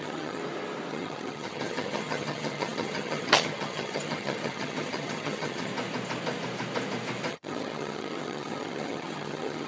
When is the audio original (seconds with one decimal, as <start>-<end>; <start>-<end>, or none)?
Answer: 0.4-0.9; 5.7-7.3